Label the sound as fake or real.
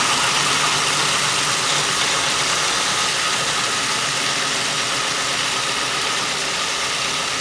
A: real